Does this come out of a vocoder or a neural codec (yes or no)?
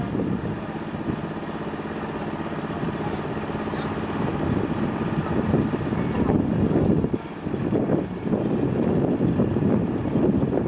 no